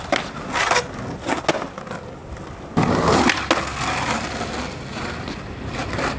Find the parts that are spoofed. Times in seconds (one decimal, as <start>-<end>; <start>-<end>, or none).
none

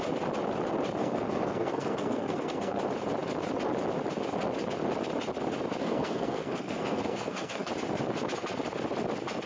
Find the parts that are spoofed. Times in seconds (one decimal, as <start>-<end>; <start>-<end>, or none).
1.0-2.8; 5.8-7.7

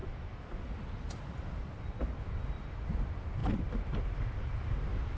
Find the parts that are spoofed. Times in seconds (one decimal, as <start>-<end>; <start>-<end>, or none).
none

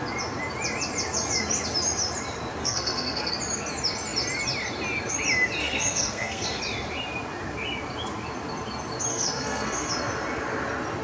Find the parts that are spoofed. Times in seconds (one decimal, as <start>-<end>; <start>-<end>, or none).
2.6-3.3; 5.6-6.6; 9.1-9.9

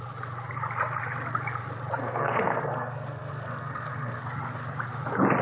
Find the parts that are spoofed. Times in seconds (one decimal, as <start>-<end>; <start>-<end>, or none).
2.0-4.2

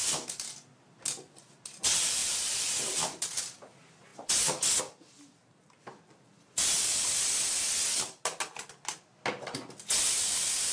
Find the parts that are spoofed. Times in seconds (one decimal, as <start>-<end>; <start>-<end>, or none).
none